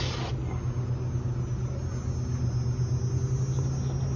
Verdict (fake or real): real